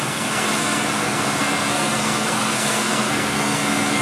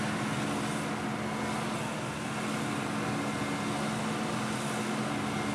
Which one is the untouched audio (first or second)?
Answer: second